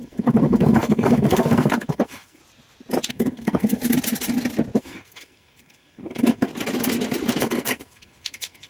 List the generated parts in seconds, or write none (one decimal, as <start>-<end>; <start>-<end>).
0.0-2.4; 3.1-3.8; 4.8-6.5; 7.4-8.7